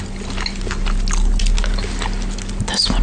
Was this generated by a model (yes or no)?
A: no